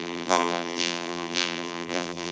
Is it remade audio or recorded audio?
remade